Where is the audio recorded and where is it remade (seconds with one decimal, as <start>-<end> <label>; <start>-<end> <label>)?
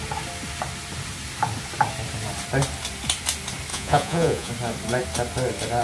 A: 0.0-3.7 recorded; 3.7-4.5 remade; 4.5-5.8 recorded